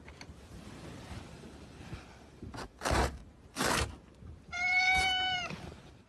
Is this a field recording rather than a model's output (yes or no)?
no